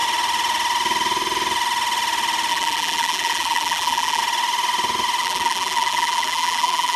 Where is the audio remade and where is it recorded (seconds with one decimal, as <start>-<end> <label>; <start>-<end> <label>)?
0.0-2.5 recorded; 2.5-4.2 remade; 4.2-5.2 recorded; 5.2-7.0 remade